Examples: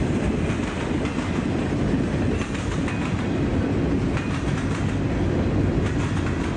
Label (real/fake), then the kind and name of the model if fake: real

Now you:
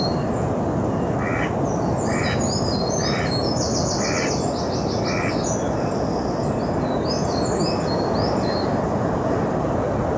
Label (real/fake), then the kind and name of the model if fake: real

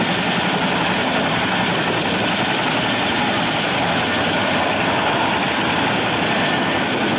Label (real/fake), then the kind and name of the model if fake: real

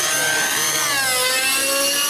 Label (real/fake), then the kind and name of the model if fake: real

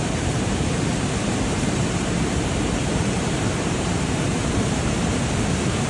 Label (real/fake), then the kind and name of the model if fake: fake, vocoder, BigVGAN v2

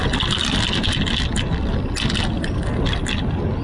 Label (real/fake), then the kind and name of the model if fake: real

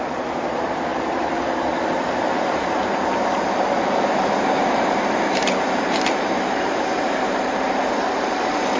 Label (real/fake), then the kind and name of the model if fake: fake, vocoder, BigVGAN v2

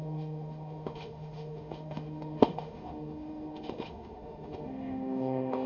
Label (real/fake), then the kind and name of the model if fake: fake, autoencoder, DAC-VAE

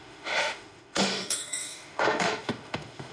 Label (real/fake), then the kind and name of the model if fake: fake, autoencoder, DAC-VAE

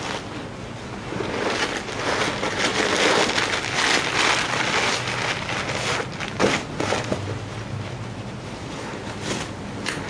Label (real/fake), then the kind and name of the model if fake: real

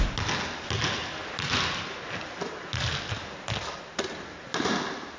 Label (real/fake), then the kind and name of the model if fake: real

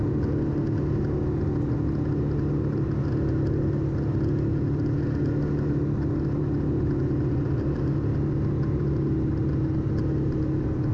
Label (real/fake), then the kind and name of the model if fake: real